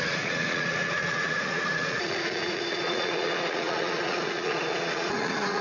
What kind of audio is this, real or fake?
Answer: fake